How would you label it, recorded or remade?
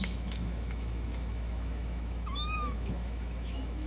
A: remade